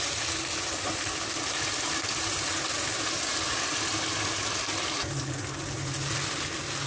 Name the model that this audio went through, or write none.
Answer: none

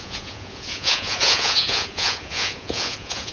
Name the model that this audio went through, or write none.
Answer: vocoder, Vocos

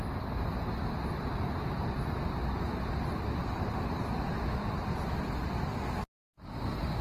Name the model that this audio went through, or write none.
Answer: none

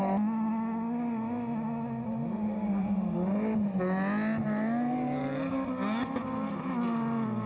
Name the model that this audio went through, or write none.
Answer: none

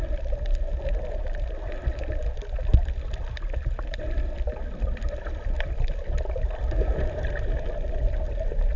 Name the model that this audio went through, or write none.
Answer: none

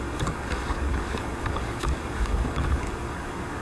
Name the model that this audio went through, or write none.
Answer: codec, DAC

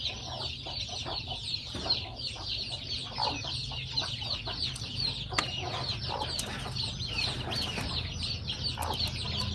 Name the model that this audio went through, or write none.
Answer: none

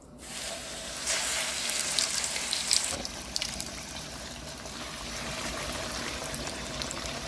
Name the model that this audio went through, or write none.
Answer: vocoder, BigVGAN v2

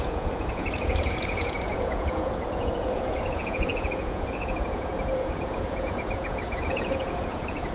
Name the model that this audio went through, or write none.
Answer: vocoder, Vocos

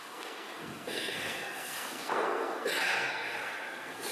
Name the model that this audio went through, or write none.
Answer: codec, SNAC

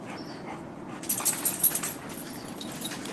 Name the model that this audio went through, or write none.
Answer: none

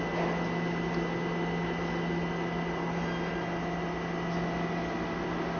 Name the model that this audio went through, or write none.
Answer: none